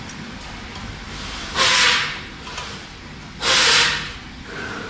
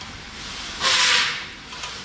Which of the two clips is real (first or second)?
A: first